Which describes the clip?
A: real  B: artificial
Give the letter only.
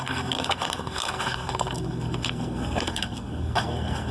B